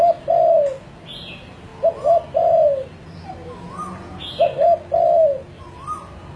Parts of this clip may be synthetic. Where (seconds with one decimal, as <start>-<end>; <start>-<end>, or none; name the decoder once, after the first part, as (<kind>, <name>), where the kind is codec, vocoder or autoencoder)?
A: none